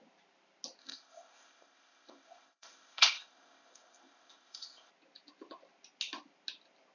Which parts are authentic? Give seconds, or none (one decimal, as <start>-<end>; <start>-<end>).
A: 0.0-0.8; 4.9-6.9